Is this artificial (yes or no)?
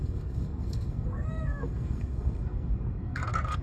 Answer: yes